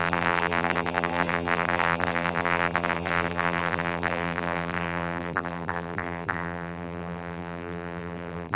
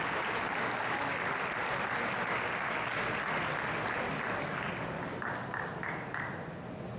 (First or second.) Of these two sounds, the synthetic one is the first